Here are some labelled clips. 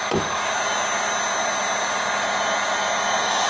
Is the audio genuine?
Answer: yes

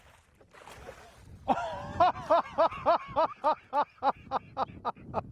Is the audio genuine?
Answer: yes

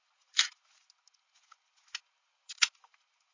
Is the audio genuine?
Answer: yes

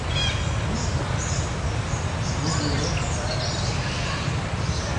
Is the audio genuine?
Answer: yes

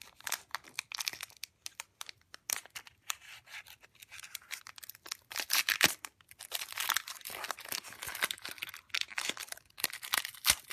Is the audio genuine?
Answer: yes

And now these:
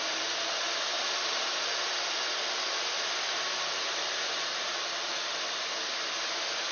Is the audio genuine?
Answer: no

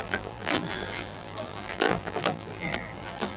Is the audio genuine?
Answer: no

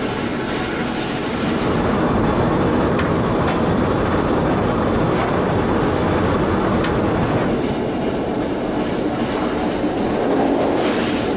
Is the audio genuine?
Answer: yes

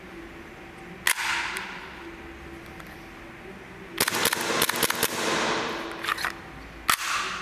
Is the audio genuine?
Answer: yes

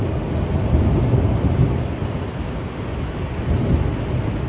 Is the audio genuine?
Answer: yes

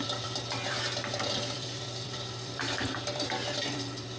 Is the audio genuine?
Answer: no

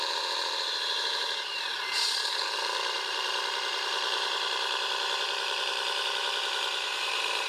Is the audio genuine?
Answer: no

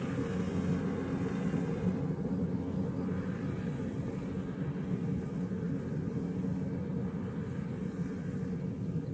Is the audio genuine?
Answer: yes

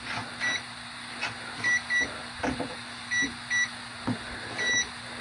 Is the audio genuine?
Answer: yes